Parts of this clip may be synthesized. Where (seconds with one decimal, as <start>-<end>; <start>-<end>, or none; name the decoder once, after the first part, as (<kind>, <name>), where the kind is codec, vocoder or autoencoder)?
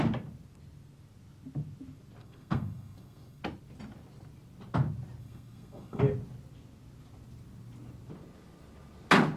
2.2-3.4 (codec, SNAC); 5.2-6.0